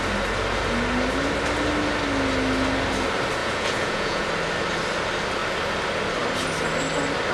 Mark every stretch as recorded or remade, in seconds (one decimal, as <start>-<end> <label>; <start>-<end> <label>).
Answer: 0.0-3.4 recorded; 3.4-4.3 remade; 4.3-7.3 recorded